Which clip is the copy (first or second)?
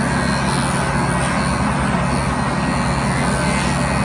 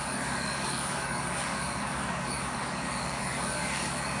second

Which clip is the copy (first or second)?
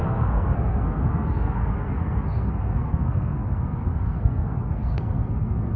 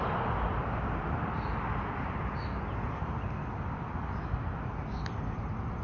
first